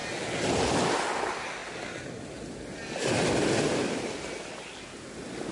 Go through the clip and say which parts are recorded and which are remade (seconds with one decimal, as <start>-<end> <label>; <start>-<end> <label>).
0.0-5.5 recorded